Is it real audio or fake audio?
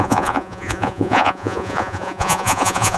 fake